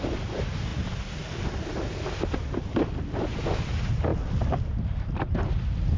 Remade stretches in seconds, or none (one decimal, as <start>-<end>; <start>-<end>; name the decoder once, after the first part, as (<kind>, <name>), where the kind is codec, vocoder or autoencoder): none